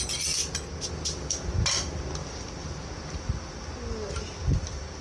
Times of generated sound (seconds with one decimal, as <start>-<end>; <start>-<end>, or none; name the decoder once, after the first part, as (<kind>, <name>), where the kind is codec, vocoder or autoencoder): 2.2-2.9 (vocoder, BigVGAN v2)